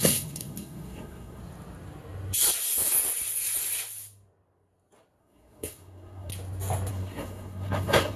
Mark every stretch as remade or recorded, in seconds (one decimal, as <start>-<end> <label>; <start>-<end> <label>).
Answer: 0.0-1.4 remade; 1.4-5.2 recorded; 5.2-6.3 remade; 6.3-6.9 recorded; 6.9-8.2 remade